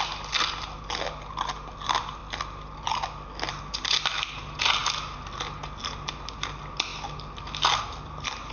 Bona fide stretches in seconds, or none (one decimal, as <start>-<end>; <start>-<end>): 0.0-8.5